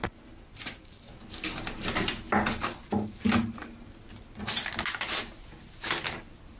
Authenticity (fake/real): real